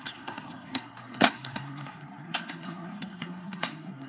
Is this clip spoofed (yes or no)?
yes